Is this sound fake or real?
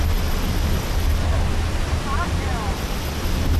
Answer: real